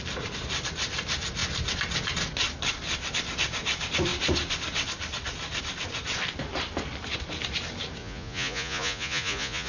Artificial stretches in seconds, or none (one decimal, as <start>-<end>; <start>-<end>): 8.0-9.7